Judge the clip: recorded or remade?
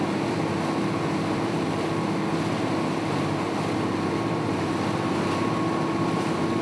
recorded